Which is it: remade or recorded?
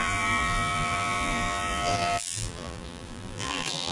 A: remade